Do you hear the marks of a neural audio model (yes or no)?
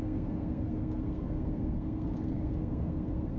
yes